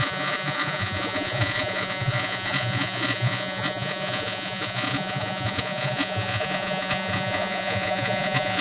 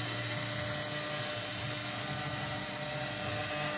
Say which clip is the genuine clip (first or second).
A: second